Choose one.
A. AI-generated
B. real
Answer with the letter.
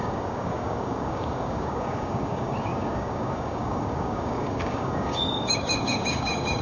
A